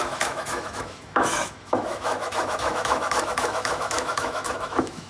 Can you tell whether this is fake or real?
fake